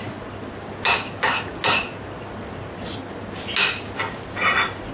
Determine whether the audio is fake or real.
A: real